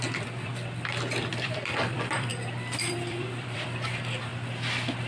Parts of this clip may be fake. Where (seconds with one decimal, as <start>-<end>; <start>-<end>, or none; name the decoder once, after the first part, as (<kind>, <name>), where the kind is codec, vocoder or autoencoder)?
0.0-0.5 (vocoder, BigVGAN v2); 1.3-2.3; 2.9-4.3